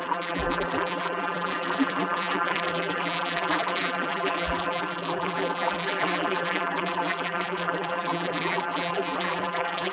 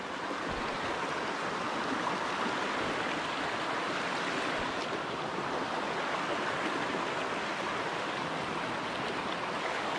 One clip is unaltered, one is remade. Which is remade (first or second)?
first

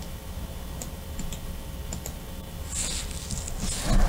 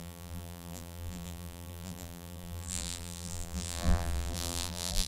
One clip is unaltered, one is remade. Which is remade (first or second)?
second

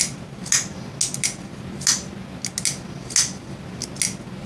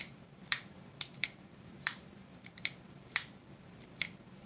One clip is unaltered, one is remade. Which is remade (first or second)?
second